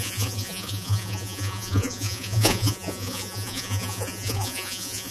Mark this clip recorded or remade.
remade